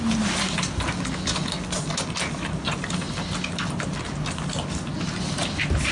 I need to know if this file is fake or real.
real